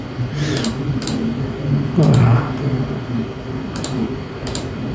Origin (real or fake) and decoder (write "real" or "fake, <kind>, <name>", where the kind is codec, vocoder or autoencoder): real